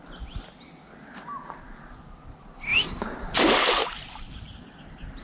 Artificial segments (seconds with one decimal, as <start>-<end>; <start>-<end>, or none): 2.7-3.4; 3.8-4.3